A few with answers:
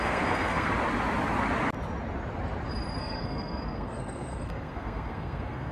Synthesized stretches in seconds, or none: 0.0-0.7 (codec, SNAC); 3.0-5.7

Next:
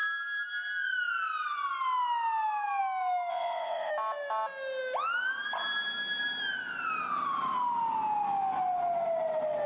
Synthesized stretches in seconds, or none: 3.3-3.9 (vocoder, Vocos)